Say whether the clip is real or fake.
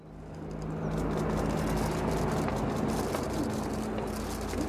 real